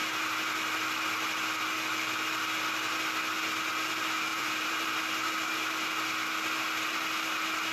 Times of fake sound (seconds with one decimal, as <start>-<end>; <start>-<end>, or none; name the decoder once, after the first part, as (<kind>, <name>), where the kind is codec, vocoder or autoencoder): 4.3-4.9 (vocoder, BigVGAN v2)